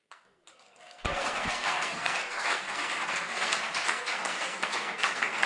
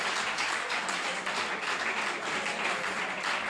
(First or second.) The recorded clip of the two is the second